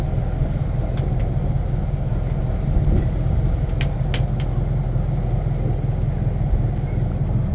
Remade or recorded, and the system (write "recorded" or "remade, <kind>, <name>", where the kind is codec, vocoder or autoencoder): recorded